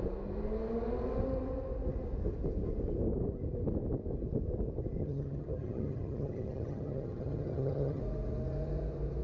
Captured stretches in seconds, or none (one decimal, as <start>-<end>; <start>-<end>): 0.0-5.0; 8.0-9.2